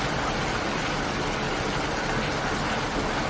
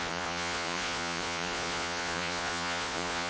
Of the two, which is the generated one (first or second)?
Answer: second